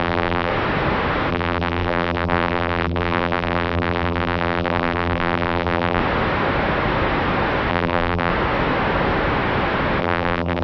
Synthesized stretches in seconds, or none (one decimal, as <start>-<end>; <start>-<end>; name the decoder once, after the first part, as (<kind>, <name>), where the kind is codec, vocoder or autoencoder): 0.0-0.5 (vocoder, BigVGAN v2); 1.3-6.0; 7.7-8.3; 10.0-10.6